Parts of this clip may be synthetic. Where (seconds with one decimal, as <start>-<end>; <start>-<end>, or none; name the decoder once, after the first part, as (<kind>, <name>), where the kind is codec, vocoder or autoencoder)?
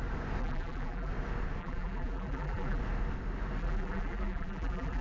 0.4-1.1 (vocoder, BigVGAN v2); 1.6-2.8; 3.6-5.0